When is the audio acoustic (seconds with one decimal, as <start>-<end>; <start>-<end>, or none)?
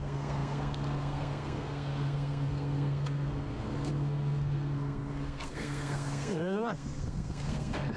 none